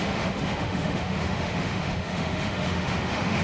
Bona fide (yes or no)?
no